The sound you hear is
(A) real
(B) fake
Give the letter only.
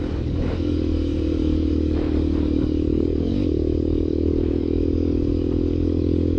B